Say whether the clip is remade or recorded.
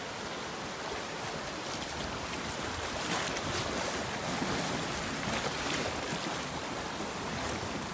recorded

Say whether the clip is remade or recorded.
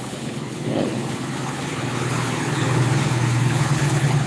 remade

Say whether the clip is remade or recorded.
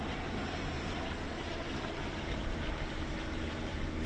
remade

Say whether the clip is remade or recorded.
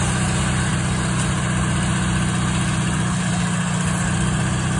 recorded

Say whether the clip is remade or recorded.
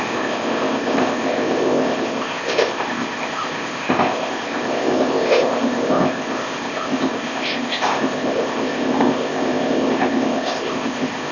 remade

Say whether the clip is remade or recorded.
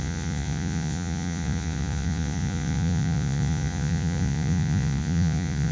remade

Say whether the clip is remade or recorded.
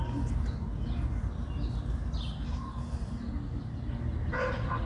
recorded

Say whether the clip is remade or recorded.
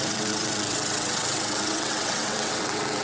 remade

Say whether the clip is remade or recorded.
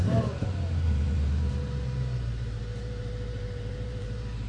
remade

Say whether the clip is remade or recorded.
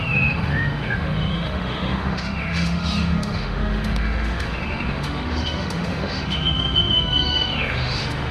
remade